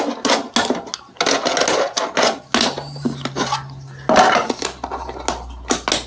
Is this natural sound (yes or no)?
yes